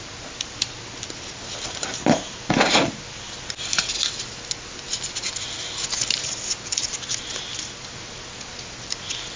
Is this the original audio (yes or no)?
yes